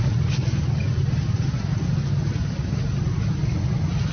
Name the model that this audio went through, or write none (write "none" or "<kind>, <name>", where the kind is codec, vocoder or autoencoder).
none